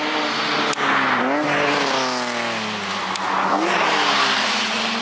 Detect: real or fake real